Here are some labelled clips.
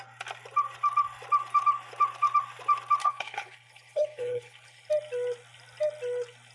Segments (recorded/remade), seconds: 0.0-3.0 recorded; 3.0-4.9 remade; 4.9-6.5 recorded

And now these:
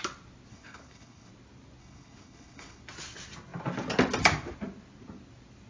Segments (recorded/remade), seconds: 0.0-0.5 recorded; 0.5-1.3 remade; 1.3-1.8 recorded; 1.8-2.8 remade; 2.8-5.7 recorded

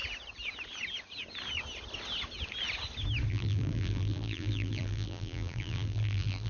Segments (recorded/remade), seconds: 0.0-3.3 recorded; 3.3-6.5 remade